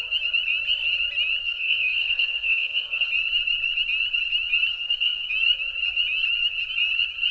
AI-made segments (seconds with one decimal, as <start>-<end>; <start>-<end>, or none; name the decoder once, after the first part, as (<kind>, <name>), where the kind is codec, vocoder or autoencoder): 1.4-3.1 (codec, SNAC); 4.7-5.3